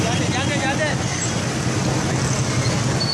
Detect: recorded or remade recorded